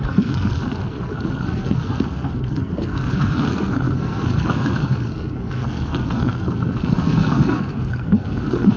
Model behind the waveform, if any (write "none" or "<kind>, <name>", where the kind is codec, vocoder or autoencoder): codec, SNAC